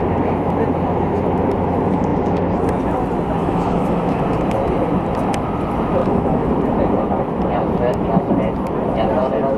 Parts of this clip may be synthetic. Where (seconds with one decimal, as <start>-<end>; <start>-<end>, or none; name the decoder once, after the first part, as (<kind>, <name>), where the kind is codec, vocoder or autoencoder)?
3.4-4.2 (autoencoder, DAC-VAE); 6.0-6.5